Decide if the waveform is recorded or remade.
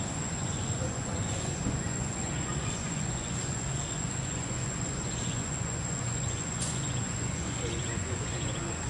remade